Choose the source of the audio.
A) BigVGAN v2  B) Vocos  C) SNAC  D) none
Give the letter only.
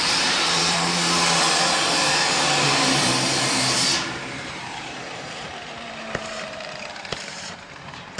A